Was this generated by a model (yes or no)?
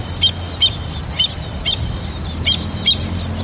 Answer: no